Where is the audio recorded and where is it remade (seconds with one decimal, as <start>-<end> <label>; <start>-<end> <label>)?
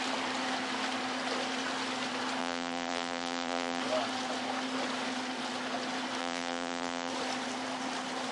0.0-2.4 recorded; 2.4-3.8 remade; 3.8-6.2 recorded; 6.2-7.1 remade; 7.1-8.3 recorded